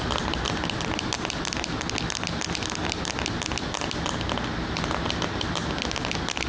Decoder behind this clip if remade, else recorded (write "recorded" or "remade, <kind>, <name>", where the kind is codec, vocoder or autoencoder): recorded